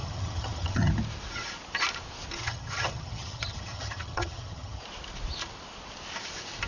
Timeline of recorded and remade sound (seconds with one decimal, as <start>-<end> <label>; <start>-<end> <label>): 0.0-0.9 remade; 0.9-2.4 recorded; 2.4-4.8 remade; 4.8-6.7 recorded